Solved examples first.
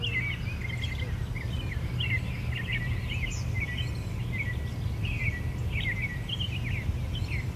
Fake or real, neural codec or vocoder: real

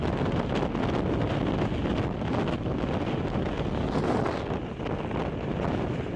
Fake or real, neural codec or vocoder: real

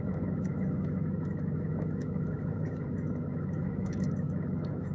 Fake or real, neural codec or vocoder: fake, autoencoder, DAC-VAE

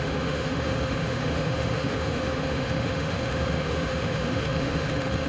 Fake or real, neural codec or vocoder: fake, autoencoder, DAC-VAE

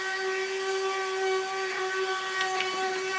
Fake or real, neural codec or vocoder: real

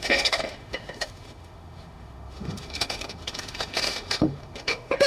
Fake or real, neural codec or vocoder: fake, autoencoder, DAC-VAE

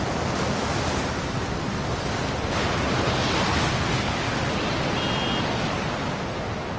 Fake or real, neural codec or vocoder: real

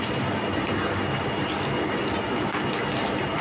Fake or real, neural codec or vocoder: real